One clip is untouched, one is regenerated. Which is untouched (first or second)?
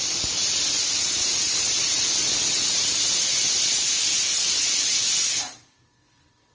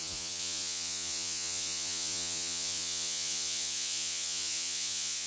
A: first